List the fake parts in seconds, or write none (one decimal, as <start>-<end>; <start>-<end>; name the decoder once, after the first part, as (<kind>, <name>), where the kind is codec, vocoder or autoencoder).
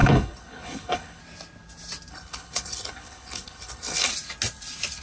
0.0-1.2 (codec, HILCodec); 2.1-4.1